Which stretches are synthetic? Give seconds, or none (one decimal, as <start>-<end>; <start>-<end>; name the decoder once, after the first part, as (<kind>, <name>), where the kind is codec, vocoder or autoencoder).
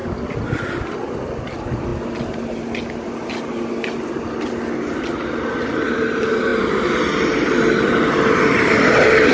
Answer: none